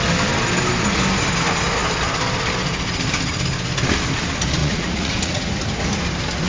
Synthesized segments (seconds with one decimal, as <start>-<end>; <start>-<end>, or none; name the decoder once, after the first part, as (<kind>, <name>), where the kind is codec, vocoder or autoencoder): 4.6-5.5 (vocoder, Vocos)